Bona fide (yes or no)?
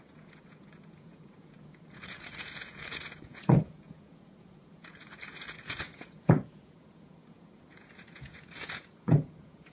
no